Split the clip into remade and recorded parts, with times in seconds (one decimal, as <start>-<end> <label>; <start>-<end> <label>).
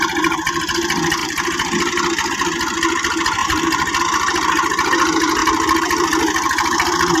0.0-3.4 recorded; 3.4-4.0 remade; 4.0-5.4 recorded; 5.4-7.2 remade